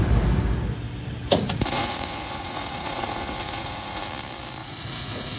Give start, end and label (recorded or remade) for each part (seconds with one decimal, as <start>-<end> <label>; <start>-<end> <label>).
0.0-1.3 recorded; 1.3-4.0 remade; 4.0-4.6 recorded; 4.6-5.4 remade